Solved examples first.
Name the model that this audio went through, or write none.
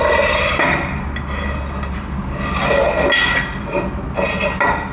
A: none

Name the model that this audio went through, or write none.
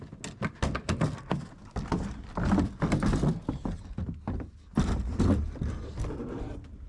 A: none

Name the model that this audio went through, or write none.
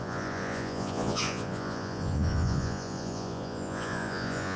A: vocoder, Vocos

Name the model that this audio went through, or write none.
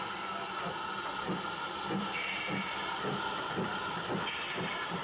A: none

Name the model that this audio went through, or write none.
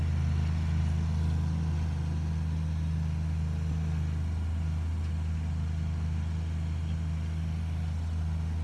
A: none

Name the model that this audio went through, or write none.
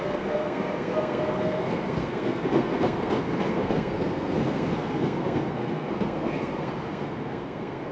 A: codec, SNAC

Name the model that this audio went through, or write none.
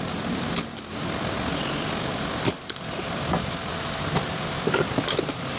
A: none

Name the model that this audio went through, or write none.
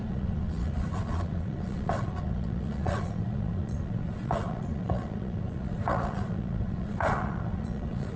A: vocoder, Vocos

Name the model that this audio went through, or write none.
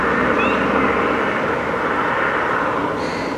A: none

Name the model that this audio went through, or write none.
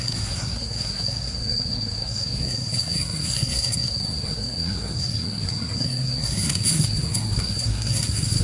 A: codec, SNAC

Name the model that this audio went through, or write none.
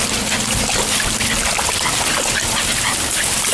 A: none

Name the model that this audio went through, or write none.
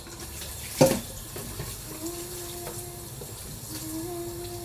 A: none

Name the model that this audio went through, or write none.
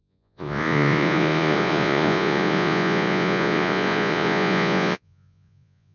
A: vocoder, Vocos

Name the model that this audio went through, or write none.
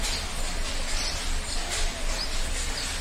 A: none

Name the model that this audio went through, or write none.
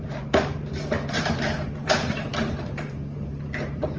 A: vocoder, BigVGAN v2